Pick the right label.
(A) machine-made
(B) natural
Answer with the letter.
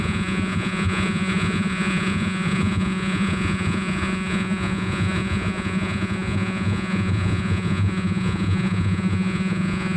A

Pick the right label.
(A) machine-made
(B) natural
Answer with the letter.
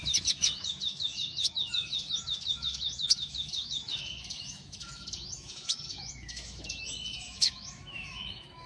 A